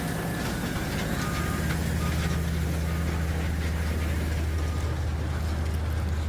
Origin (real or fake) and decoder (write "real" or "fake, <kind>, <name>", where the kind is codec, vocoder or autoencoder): real